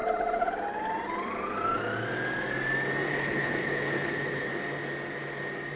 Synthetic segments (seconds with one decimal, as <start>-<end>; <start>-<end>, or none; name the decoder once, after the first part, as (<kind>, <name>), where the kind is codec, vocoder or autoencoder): 3.1-4.5 (codec, HILCodec)